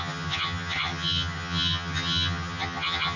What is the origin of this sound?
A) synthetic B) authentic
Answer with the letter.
A